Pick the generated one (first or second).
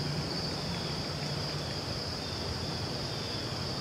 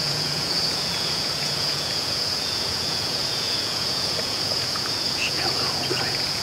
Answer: second